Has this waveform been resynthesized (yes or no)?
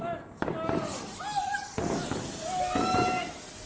no